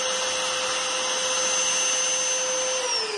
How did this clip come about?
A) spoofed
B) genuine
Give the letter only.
B